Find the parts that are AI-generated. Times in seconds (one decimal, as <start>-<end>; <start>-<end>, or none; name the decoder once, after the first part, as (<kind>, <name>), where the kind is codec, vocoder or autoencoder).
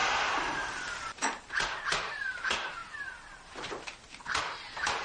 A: 0.0-1.5 (vocoder, BigVGAN v2); 2.8-3.5